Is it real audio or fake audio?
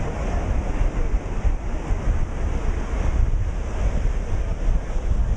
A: real